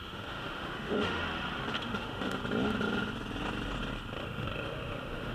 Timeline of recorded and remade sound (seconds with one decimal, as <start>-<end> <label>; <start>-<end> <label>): 0.0-1.2 remade; 1.2-1.8 recorded; 1.8-2.4 remade; 2.4-4.2 recorded; 4.2-5.3 remade